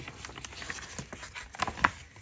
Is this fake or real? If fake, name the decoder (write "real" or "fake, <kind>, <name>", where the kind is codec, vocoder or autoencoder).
real